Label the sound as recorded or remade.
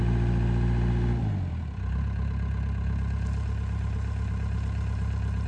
recorded